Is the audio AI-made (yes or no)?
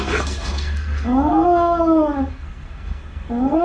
yes